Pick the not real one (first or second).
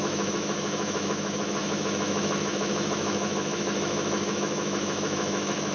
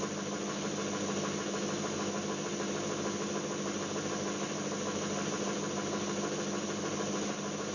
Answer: first